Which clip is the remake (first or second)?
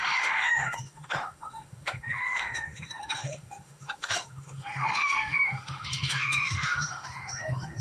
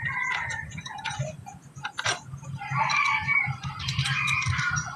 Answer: first